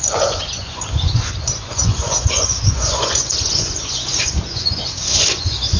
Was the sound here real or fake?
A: fake